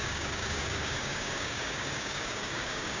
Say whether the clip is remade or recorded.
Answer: remade